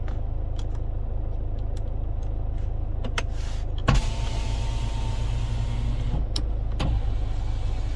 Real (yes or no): yes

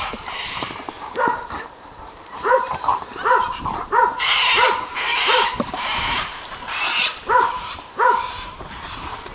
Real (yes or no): no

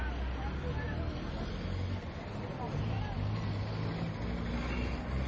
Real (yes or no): yes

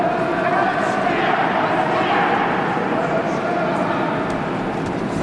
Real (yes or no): yes